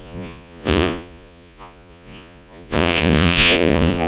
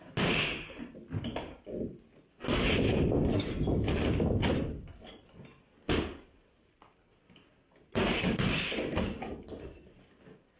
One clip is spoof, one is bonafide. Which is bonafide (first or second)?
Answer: second